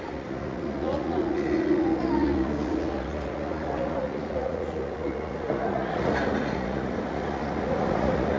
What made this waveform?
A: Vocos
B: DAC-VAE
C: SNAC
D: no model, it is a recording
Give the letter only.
A